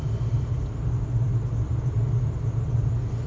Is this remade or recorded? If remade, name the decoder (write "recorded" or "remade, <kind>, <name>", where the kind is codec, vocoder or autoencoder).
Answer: recorded